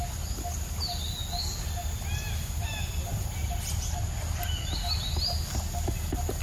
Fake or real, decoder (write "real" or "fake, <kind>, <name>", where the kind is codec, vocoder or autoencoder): real